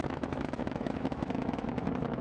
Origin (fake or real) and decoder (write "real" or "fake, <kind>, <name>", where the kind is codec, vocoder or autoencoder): fake, autoencoder, DAC-VAE